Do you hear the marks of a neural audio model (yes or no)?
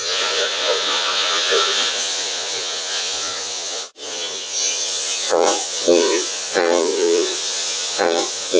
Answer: yes